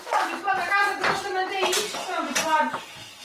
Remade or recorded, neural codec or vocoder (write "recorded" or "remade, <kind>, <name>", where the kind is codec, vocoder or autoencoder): recorded